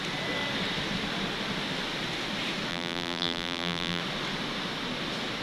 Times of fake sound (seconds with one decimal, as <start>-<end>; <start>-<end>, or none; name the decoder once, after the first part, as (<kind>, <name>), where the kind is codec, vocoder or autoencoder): 2.7-4.0 (vocoder, BigVGAN v2)